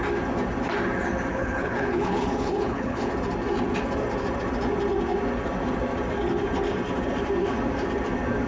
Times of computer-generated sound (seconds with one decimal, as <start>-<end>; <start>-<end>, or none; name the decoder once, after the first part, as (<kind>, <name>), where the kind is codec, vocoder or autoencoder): 1.3-3.1 (codec, HILCodec)